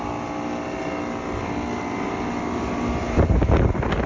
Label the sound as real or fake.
real